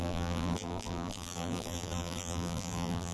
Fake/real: fake